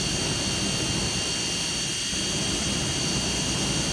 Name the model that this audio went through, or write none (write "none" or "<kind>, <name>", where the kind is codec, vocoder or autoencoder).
none